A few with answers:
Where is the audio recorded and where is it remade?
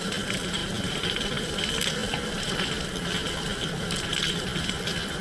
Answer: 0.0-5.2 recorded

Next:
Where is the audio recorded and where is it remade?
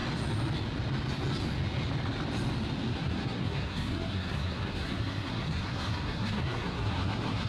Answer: 0.0-2.9 recorded; 2.9-7.5 remade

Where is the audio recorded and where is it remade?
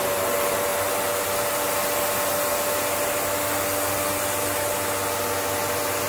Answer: 0.0-6.1 recorded